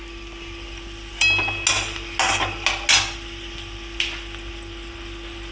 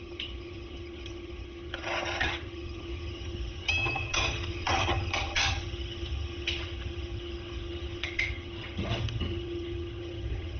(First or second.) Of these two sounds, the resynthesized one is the second